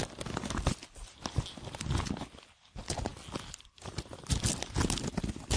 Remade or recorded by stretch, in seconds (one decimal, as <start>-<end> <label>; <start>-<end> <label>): 0.0-5.6 recorded